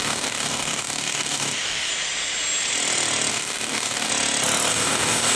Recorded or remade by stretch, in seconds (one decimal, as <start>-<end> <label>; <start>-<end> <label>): 0.0-1.9 remade; 1.9-3.3 recorded; 3.3-4.1 remade; 4.1-4.7 recorded; 4.7-5.4 remade